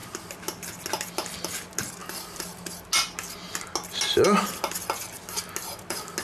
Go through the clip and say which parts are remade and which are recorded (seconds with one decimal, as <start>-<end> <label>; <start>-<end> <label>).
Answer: 0.0-6.2 recorded